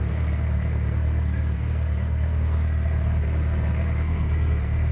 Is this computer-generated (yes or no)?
yes